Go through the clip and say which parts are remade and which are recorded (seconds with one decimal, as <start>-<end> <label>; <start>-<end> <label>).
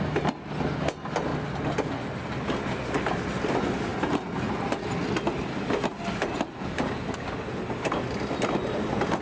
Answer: 0.0-9.2 recorded